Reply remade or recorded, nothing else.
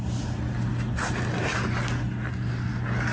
recorded